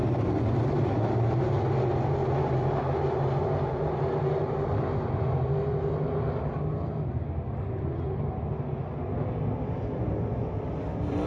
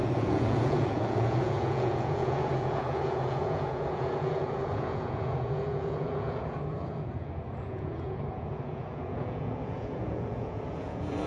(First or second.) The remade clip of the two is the second